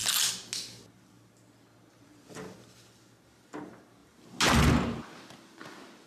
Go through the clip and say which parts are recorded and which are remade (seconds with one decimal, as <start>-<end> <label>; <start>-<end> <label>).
0.0-6.1 recorded